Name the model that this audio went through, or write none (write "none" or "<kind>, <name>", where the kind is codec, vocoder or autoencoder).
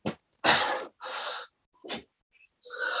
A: none